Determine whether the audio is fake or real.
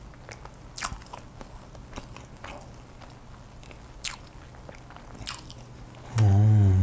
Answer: real